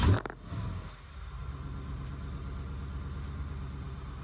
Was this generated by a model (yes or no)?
no